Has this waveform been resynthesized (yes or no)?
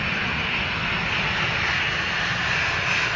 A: no